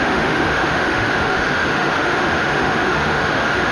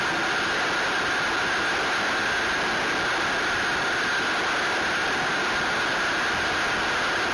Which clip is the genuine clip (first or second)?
second